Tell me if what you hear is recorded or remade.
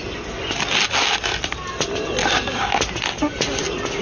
recorded